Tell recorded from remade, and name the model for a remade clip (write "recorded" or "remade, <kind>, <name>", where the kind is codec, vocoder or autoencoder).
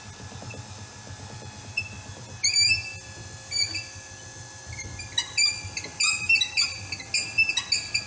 recorded